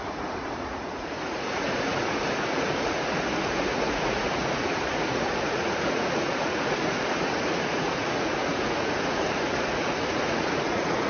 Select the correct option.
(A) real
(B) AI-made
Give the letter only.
B